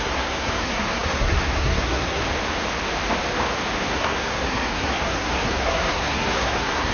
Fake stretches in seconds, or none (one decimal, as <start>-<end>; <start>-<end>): 0.0-2.2; 3.9-6.9